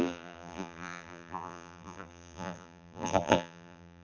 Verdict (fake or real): fake